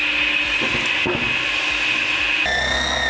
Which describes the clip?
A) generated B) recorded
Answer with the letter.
B